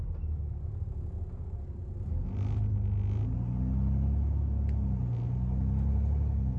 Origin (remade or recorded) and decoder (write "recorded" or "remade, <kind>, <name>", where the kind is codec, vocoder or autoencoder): recorded